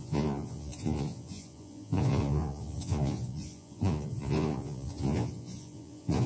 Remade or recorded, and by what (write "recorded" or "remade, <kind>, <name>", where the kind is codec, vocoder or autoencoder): remade, vocoder, Vocos